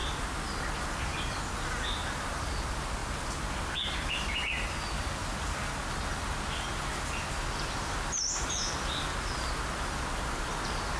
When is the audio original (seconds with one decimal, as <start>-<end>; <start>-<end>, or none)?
0.0-11.0